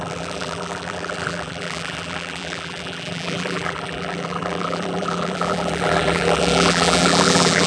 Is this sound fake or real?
fake